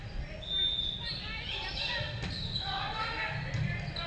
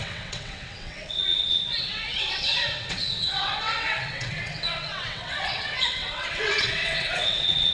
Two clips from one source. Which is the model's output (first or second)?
second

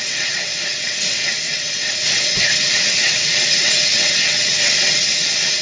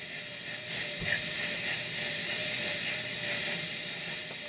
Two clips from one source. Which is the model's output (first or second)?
first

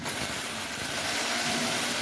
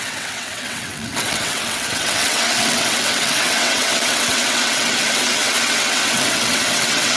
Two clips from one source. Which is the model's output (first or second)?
second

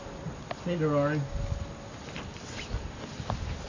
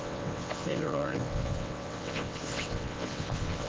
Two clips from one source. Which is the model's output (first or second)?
second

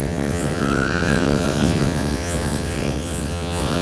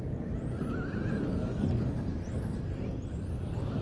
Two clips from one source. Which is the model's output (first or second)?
first